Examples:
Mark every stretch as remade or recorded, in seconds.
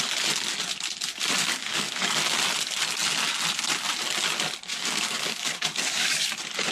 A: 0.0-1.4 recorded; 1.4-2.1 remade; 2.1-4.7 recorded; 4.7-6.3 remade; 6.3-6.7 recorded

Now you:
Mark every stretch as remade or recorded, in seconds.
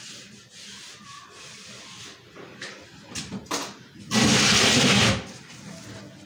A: 0.0-6.3 recorded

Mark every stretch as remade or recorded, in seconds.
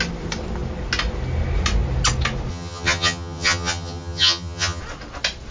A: 0.0-2.5 recorded; 2.5-4.8 remade; 4.8-5.5 recorded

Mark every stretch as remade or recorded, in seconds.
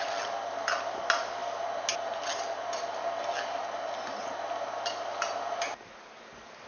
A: 0.0-6.7 recorded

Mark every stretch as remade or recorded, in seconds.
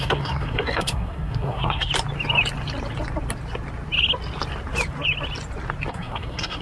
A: 0.0-1.9 remade; 1.9-5.9 recorded; 5.9-6.6 remade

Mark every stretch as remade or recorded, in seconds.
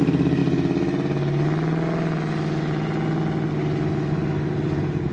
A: 0.0-5.1 recorded